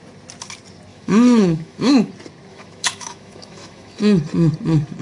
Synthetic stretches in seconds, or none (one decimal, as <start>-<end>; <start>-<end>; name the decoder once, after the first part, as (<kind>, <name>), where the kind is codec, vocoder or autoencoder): 0.9-2.1 (autoencoder, DAC-VAE); 2.5-4.0